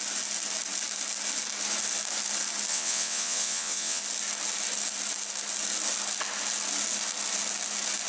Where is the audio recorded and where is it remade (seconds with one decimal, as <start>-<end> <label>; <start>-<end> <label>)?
0.0-2.7 recorded; 2.7-4.0 remade; 4.0-8.1 recorded